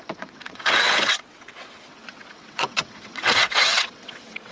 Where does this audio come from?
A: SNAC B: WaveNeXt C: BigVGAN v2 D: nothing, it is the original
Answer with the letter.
B